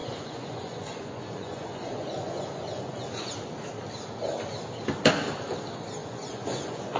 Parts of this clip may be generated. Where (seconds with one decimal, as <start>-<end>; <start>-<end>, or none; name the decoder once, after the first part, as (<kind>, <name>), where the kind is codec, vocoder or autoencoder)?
0.0-3.3 (vocoder, Vocos); 6.0-7.0